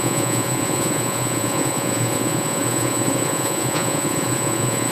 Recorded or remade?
remade